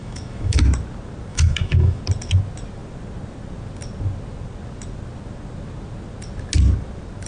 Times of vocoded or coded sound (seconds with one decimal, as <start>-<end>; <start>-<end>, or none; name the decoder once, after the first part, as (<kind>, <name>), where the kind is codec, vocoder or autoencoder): 0.0-0.6 (autoencoder, DAC-VAE); 1.3-2.0